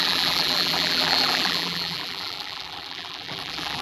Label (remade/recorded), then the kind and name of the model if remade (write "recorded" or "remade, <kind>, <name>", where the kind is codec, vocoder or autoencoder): remade, vocoder, BigVGAN v2